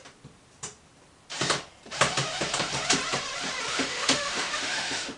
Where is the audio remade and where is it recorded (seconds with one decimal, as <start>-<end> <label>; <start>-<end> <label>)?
0.0-3.7 recorded; 3.7-5.2 remade

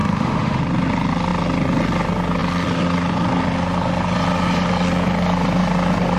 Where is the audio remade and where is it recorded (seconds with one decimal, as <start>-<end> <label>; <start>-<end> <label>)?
0.0-0.6 remade; 0.6-6.2 recorded

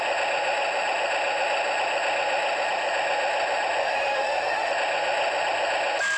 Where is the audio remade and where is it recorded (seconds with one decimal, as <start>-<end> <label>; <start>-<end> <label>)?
0.0-3.8 recorded; 3.8-4.7 remade; 4.7-6.2 recorded

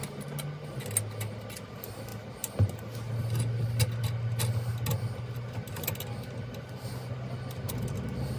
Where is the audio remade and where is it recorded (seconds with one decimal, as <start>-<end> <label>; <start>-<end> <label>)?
0.0-8.4 recorded

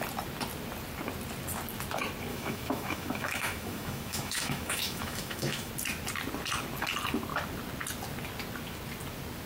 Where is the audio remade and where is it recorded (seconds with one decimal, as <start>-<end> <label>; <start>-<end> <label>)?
0.0-2.3 recorded; 2.3-5.7 remade; 5.7-9.5 recorded

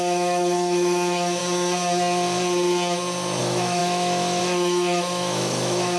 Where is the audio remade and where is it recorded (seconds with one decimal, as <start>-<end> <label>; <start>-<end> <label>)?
0.0-1.4 remade; 1.4-3.4 recorded; 3.4-6.0 remade

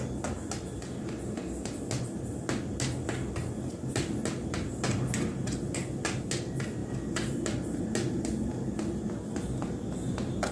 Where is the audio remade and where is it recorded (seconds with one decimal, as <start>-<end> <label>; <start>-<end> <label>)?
0.0-10.5 recorded

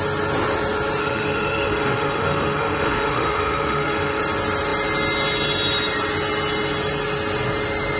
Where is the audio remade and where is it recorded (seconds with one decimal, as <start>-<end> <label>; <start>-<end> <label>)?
0.0-1.0 recorded; 1.0-4.2 remade; 4.2-8.0 recorded